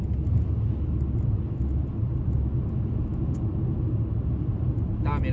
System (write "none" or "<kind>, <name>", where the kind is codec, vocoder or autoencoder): none